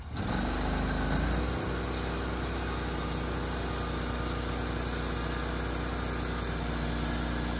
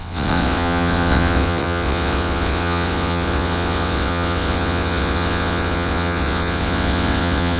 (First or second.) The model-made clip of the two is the second